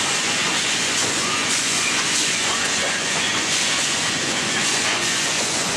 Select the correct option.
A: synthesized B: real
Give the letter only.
A